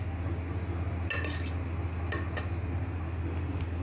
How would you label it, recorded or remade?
recorded